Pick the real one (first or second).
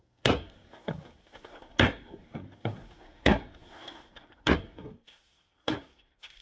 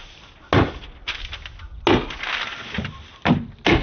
second